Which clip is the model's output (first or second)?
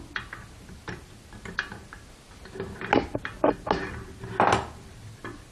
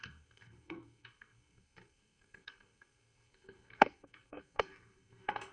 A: second